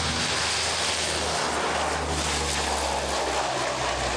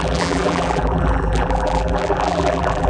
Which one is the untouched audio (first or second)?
first